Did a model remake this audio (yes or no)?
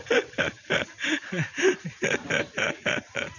yes